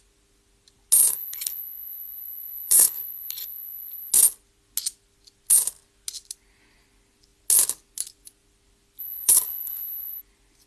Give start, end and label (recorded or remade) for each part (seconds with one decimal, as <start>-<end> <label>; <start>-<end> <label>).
0.0-1.1 recorded; 1.1-4.1 remade; 4.1-9.0 recorded; 9.0-10.2 remade; 10.2-10.7 recorded